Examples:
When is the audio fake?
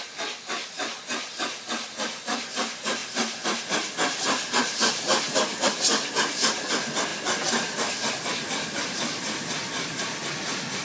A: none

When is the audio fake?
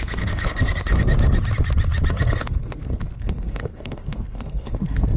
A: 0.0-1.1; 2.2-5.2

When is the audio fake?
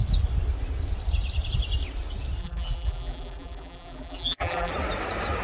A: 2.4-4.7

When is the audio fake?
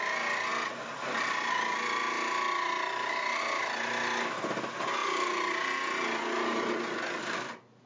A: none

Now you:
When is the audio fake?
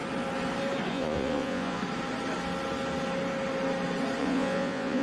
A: 0.9-1.8; 4.2-5.0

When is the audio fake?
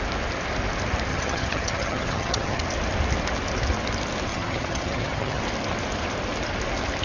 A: 1.1-2.6; 4.3-5.4